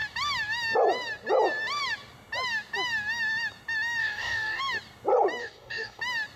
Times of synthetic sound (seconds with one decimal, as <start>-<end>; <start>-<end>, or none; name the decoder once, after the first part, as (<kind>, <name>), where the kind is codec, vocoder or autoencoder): 4.0-4.6 (codec, DAC); 5.4-6.0